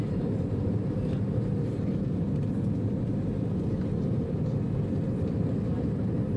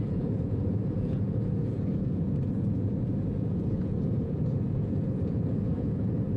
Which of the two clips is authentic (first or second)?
first